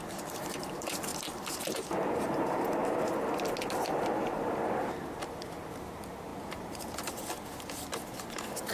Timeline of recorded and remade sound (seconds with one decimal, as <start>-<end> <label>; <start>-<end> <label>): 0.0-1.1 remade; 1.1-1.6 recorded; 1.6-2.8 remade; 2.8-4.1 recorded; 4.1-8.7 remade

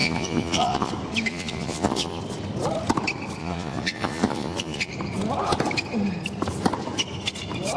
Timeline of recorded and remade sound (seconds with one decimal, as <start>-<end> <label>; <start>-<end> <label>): 0.0-0.9 remade; 0.9-1.3 recorded; 1.3-2.2 remade; 2.2-3.4 recorded; 3.4-4.9 remade; 4.9-7.8 recorded

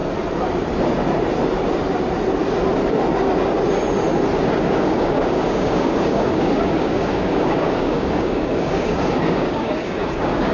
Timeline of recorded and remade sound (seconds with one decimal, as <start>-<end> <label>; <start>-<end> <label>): 0.0-4.6 recorded; 4.6-10.5 remade

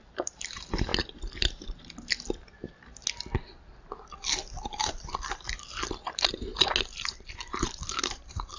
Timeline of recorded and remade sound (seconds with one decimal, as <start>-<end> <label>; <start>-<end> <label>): 0.0-0.9 remade; 0.9-6.1 recorded; 6.1-6.5 remade; 6.5-7.3 recorded; 7.3-8.6 remade